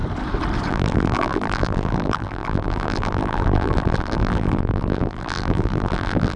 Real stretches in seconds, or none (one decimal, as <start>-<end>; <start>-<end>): 0.0-0.7